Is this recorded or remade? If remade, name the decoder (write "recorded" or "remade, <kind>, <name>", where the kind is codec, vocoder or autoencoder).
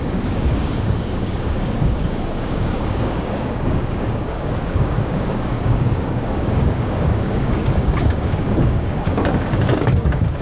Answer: remade, codec, DAC